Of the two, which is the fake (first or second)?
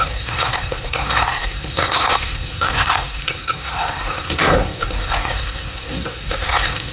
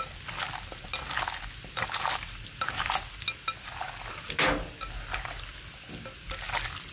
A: first